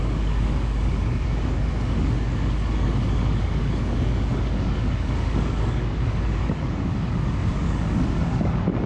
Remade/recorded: remade